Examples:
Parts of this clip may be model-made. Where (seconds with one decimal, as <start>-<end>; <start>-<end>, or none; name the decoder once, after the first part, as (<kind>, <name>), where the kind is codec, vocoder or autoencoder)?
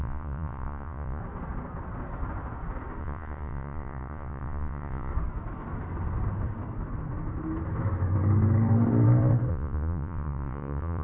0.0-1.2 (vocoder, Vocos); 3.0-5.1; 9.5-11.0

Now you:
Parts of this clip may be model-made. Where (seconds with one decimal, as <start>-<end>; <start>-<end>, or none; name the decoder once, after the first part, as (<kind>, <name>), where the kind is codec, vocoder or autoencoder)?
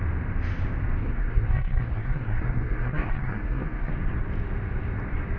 1.0-3.9 (codec, SNAC)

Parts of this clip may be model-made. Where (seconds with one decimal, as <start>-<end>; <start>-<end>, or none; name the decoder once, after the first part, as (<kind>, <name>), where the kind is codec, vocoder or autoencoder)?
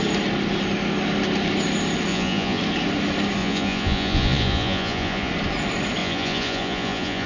2.1-2.6 (vocoder, Vocos); 3.4-5.3; 6.0-7.3